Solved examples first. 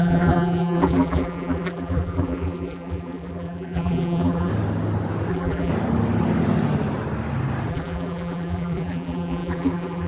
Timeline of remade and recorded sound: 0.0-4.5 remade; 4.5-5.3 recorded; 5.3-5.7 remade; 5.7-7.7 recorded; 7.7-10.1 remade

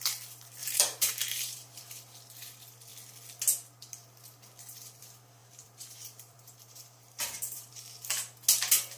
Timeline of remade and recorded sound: 0.0-0.6 recorded; 0.6-1.8 remade; 1.8-5.4 recorded; 5.4-7.7 remade; 7.7-9.0 recorded

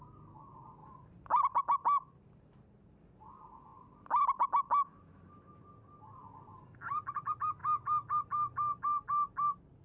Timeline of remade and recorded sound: 0.0-0.8 recorded; 0.8-1.4 remade; 1.4-6.2 recorded; 6.2-6.9 remade; 6.9-7.6 recorded; 7.6-8.2 remade; 8.2-9.8 recorded

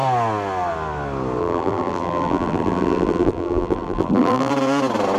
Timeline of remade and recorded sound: 0.0-1.4 recorded; 1.4-4.5 remade; 4.5-5.2 recorded